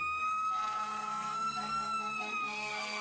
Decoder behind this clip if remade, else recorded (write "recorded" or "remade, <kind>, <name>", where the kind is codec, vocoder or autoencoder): remade, codec, SNAC